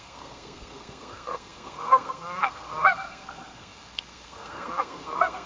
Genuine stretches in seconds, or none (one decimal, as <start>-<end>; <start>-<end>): none